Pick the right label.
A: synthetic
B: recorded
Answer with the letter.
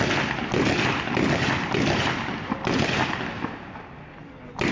B